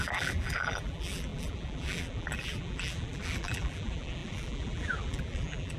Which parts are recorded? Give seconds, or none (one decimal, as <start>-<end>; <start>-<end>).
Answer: none